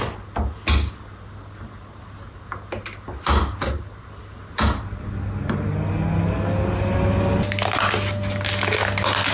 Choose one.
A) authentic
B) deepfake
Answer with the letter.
A